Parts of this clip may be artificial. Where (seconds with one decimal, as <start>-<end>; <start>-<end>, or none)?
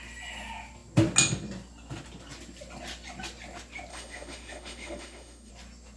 3.9-5.5